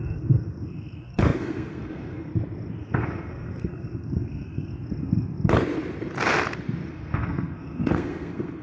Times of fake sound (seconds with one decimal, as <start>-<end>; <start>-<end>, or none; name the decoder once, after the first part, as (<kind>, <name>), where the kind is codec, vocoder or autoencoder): 0.0-2.3 (codec, SNAC); 2.8-4.7; 6.9-8.6